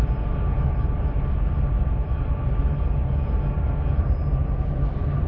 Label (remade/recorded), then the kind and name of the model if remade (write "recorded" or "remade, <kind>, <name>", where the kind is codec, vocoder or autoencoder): recorded